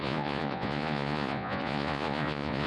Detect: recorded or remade remade